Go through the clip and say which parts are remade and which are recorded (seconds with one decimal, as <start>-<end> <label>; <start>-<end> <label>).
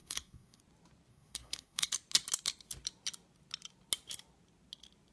0.0-0.6 remade; 0.6-1.1 recorded; 1.1-1.9 remade; 1.9-5.1 recorded